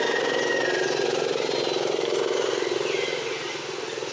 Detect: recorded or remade recorded